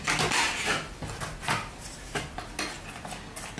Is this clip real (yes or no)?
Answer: yes